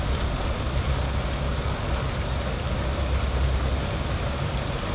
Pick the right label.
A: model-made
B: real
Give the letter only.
B